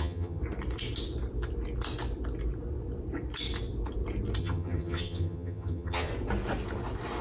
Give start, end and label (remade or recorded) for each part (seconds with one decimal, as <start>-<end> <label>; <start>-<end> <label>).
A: 0.0-0.4 remade; 0.4-4.4 recorded; 4.4-6.1 remade; 6.1-7.2 recorded